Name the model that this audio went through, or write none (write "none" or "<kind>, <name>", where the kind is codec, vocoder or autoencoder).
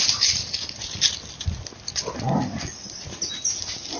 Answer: none